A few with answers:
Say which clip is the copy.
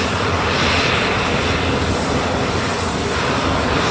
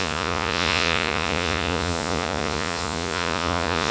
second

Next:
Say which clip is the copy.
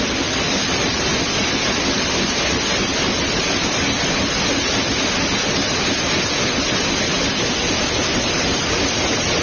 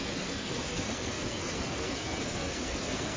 second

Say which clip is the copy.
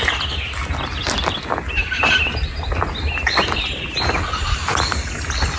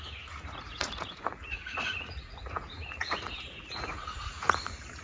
second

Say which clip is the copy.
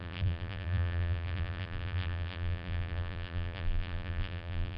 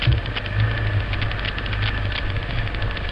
first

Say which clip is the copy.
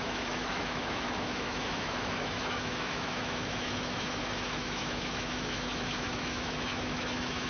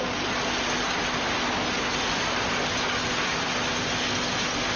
first